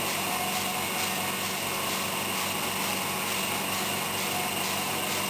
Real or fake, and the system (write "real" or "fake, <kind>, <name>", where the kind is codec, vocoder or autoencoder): real